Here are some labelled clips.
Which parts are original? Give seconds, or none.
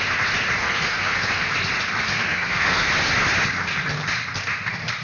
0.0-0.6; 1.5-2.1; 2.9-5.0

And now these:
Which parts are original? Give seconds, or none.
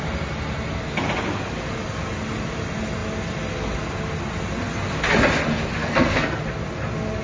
0.0-5.8; 6.4-7.2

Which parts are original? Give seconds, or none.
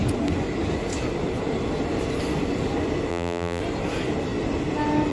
0.0-3.1; 3.6-5.1